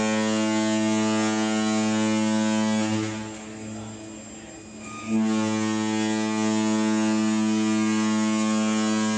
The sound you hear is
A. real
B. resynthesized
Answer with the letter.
A